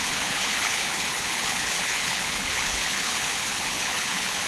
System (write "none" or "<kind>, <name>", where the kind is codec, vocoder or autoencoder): codec, HILCodec